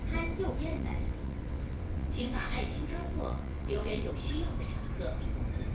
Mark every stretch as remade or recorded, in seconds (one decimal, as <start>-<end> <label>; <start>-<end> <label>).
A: 0.0-0.7 recorded; 0.7-4.1 remade; 4.1-5.7 recorded